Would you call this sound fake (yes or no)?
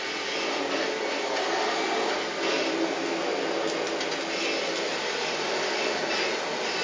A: no